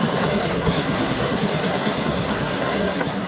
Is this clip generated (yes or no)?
yes